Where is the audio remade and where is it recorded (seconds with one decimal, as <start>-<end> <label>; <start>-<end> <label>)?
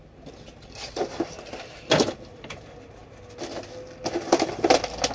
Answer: 0.0-5.1 recorded